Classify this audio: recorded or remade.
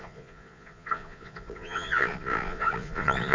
remade